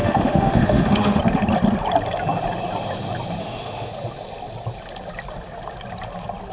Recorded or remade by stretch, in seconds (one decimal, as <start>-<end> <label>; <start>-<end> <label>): 0.0-1.2 remade; 1.2-3.4 recorded; 3.4-3.9 remade; 3.9-6.5 recorded